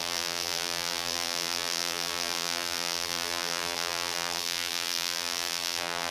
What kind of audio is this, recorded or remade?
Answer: remade